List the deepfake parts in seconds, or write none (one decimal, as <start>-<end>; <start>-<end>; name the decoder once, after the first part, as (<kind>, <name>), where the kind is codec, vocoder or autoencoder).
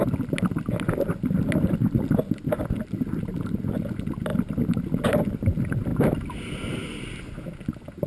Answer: none